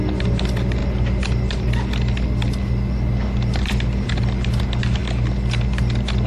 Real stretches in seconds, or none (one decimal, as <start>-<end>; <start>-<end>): 0.0-6.3